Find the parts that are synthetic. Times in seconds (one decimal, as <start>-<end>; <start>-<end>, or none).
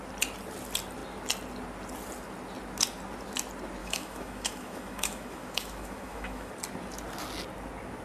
3.8-6.5